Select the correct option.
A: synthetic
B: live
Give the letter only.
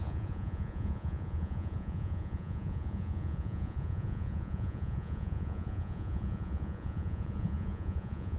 A